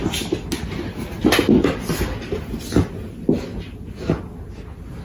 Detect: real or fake real